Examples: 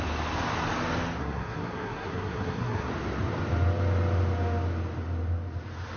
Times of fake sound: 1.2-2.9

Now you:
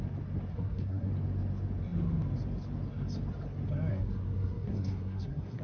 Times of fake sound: 0.5-1.1; 3.9-5.6

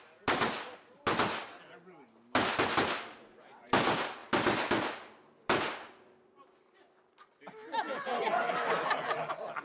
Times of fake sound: none

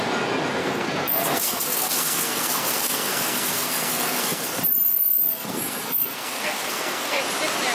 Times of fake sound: 0.6-4.6; 5.3-7.2

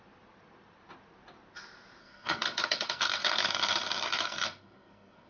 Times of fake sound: 2.0-5.3

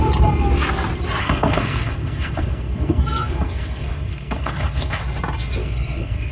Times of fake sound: 1.2-5.0; 5.6-6.3

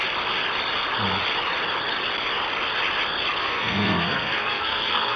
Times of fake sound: 3.4-5.2

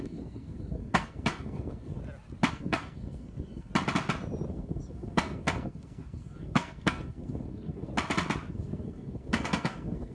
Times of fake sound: 0.0-2.0; 2.5-3.7; 4.5-7.9; 8.5-10.1